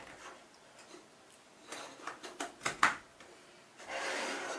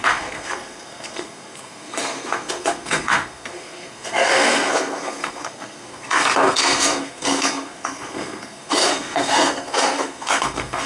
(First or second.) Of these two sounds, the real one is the first